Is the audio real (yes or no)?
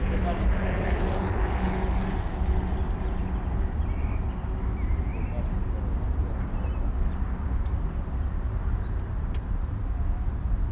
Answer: yes